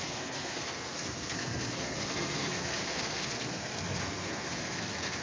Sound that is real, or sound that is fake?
fake